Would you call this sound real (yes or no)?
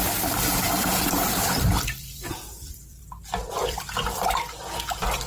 no